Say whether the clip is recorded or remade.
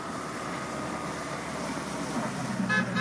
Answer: recorded